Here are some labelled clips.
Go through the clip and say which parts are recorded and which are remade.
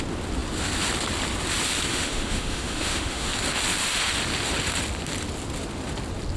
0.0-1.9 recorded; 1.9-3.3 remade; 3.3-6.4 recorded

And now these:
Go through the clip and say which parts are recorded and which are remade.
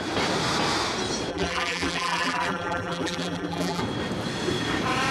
0.0-1.3 recorded; 1.3-3.8 remade; 3.8-5.1 recorded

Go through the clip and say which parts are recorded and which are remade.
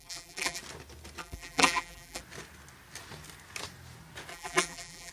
0.0-0.6 remade; 0.6-1.2 recorded; 1.2-2.2 remade; 2.2-4.3 recorded; 4.3-5.1 remade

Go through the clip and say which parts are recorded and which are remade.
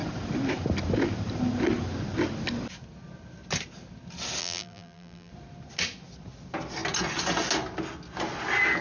0.0-4.4 recorded; 4.4-5.3 remade; 5.3-8.8 recorded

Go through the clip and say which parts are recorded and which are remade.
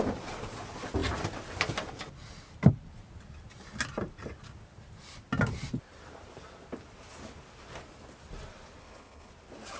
0.0-8.8 recorded; 8.8-9.3 remade; 9.3-9.8 recorded